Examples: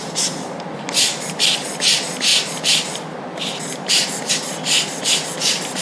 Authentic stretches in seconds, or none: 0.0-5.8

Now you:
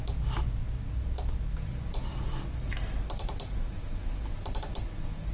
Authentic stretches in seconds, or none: 0.0-2.7; 4.8-5.3